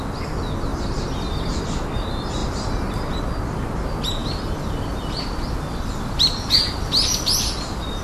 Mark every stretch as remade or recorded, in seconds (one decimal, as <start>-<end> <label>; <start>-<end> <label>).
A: 0.0-0.7 recorded; 0.7-1.6 remade; 1.6-2.4 recorded; 2.4-3.2 remade; 3.2-4.2 recorded; 4.2-6.5 remade; 6.5-8.0 recorded